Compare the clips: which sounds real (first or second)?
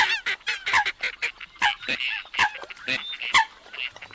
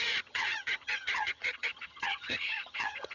first